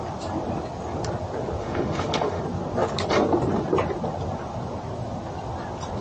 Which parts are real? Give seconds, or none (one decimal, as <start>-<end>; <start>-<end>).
0.0-1.6; 2.4-6.0